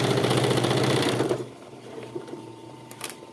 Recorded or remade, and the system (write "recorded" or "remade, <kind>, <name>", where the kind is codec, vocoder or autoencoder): remade, vocoder, BigVGAN v2